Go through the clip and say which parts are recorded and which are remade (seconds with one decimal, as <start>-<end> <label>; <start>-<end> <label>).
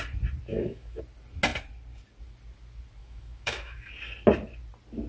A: 0.0-0.5 recorded; 0.5-1.0 remade; 1.0-3.0 recorded; 3.0-3.9 remade; 3.9-5.1 recorded